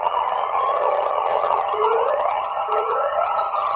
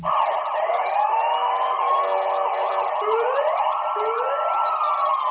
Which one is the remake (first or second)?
first